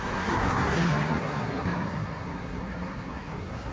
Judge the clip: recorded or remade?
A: remade